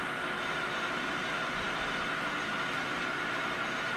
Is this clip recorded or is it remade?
recorded